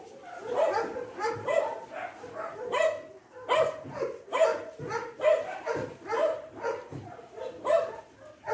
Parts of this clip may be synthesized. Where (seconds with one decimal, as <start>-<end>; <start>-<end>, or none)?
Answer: 4.5-8.0